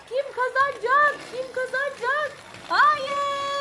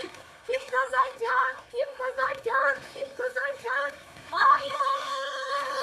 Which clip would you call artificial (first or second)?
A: second